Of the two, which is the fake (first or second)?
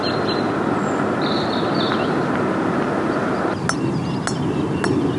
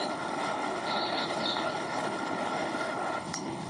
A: second